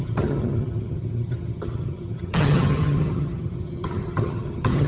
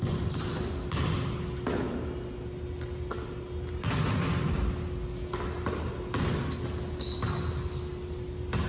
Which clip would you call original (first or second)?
second